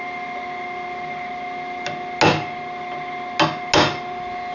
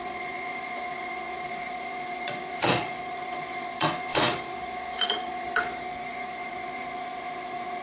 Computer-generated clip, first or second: second